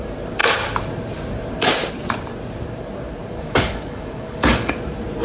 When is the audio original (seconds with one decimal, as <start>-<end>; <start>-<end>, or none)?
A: 0.0-3.2; 4.7-5.2